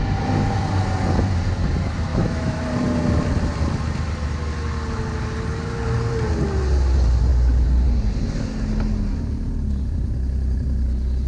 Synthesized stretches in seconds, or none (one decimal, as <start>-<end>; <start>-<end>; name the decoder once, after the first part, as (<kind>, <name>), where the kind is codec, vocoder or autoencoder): 2.1-2.6 (autoencoder, DAC-VAE)